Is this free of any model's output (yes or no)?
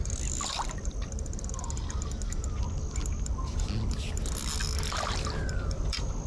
yes